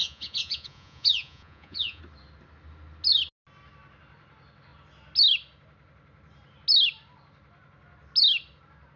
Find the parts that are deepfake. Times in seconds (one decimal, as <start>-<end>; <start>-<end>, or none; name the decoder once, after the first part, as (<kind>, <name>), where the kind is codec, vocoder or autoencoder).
0.0-2.0 (vocoder, Vocos)